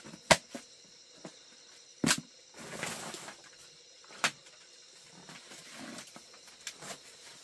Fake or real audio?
real